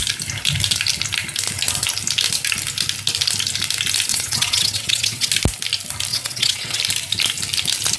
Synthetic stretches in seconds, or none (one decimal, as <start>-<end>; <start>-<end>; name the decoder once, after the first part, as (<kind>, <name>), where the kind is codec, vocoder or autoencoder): 4.1-5.3 (vocoder, WaveNeXt); 6.1-6.8